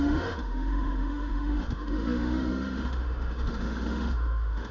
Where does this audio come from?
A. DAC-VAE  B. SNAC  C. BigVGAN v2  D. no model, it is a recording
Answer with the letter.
A